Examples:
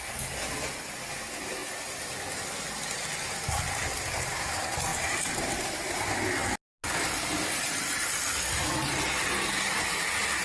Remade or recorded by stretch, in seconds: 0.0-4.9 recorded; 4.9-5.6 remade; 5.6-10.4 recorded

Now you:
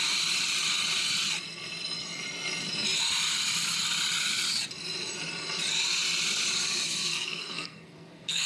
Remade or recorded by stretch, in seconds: 0.0-7.1 recorded; 7.1-8.5 remade